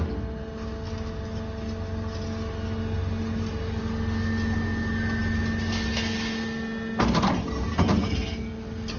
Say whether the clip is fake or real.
real